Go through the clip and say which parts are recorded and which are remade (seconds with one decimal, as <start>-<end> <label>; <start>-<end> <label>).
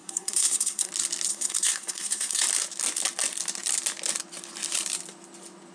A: 0.0-0.9 remade; 0.9-1.3 recorded; 1.3-2.4 remade; 2.4-5.7 recorded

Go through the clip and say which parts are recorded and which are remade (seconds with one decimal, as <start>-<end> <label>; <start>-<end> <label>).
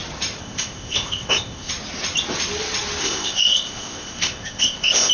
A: 0.0-0.4 recorded; 0.4-1.7 remade; 1.7-3.0 recorded; 3.0-5.1 remade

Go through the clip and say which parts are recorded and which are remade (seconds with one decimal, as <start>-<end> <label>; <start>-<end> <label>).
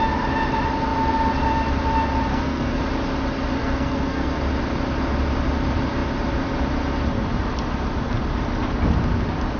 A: 0.0-2.3 recorded; 2.3-2.8 remade; 2.8-3.6 recorded; 3.6-4.4 remade; 4.4-9.6 recorded